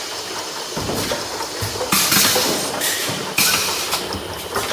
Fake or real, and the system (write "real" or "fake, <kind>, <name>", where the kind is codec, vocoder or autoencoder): real